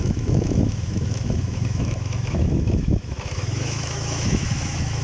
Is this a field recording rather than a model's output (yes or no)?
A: no